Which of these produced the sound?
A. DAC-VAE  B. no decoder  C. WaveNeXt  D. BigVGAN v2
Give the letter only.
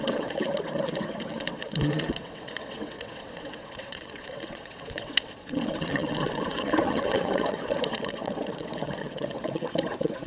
C